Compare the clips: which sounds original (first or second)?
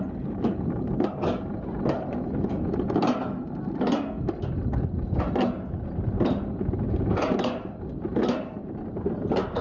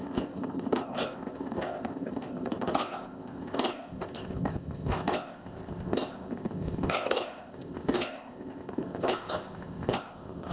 first